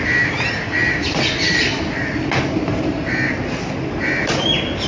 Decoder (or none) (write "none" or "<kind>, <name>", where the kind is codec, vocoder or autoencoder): none